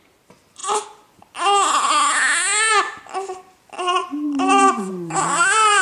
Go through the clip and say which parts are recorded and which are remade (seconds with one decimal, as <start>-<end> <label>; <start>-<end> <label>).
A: 0.0-4.0 recorded; 4.0-5.8 remade

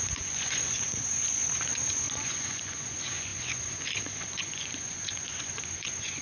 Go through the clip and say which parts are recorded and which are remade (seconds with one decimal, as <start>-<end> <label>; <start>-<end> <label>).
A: 0.0-1.4 remade; 1.4-1.9 recorded; 1.9-6.2 remade

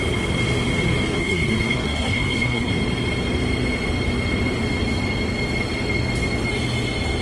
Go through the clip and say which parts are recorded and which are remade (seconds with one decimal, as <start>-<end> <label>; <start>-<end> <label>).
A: 0.0-1.2 recorded; 1.2-2.7 remade; 2.7-7.2 recorded

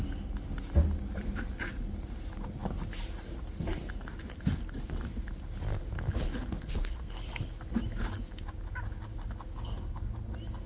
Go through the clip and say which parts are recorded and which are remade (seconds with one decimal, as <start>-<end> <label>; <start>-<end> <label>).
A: 0.0-6.6 recorded; 6.6-7.2 remade; 7.2-10.7 recorded